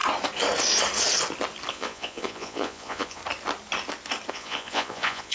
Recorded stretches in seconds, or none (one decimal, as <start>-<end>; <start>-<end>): 0.0-1.7; 3.2-4.3